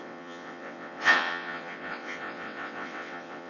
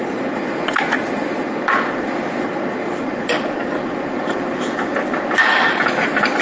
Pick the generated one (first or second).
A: first